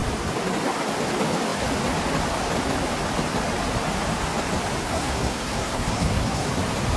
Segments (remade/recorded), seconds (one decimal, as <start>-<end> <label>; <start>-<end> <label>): 0.0-4.8 recorded; 4.8-6.5 remade; 6.5-7.0 recorded

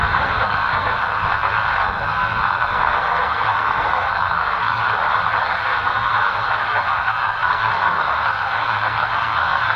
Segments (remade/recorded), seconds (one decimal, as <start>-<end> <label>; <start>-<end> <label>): 0.0-4.8 remade; 4.8-5.4 recorded; 5.4-9.8 remade

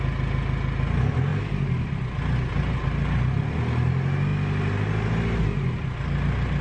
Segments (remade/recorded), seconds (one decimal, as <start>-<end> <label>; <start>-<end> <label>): 0.0-6.6 recorded

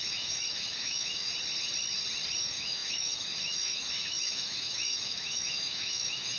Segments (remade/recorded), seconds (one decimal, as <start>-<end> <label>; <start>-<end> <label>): 0.0-1.3 remade; 1.3-2.4 recorded; 2.4-6.4 remade

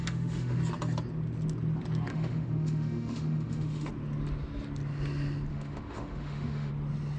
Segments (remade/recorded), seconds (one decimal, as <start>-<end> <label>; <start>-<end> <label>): 0.0-0.6 remade; 0.6-2.1 recorded; 2.1-3.9 remade; 3.9-5.5 recorded; 5.5-6.7 remade; 6.7-7.2 recorded